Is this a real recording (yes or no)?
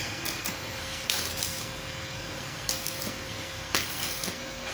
no